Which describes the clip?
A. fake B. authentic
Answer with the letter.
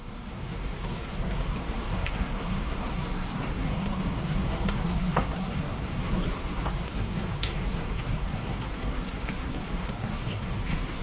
A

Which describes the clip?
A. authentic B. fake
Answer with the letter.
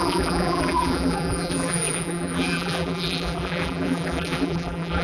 B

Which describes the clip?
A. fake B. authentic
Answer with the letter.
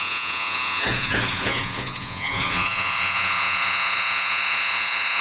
A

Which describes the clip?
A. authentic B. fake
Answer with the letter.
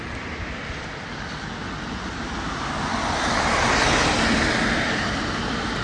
B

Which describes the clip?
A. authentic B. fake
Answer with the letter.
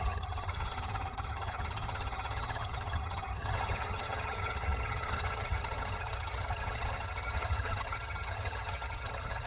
B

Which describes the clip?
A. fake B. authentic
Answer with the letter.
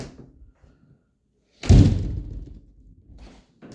B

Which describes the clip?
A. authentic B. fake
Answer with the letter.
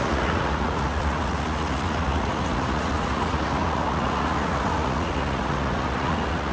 B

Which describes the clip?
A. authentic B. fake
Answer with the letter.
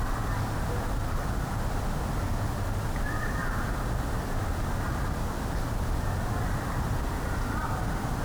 A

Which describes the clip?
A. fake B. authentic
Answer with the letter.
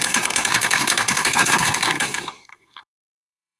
A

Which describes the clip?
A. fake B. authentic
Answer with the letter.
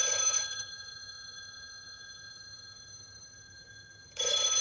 A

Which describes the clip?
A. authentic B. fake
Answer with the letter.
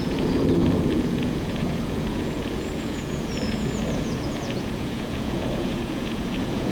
B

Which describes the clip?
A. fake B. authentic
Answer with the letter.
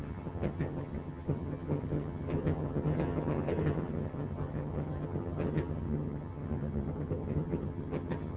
A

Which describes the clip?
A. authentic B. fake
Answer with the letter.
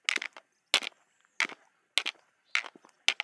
A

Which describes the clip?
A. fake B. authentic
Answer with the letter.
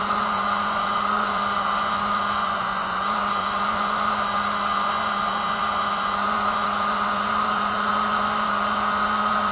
A